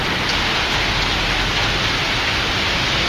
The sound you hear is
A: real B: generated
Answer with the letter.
A